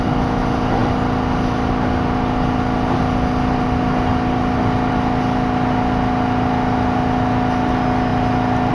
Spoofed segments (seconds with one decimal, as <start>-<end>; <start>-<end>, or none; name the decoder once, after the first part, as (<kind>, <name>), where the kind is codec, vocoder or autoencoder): none